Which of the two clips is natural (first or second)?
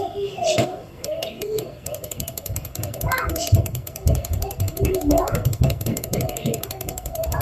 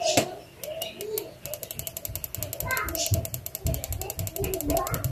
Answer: second